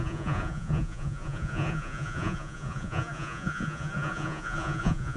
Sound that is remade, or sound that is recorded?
remade